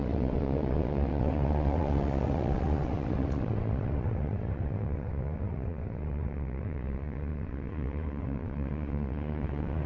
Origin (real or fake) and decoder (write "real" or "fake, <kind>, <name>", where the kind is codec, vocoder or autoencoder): fake, vocoder, WaveNeXt